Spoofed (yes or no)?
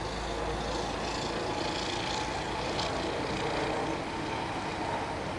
no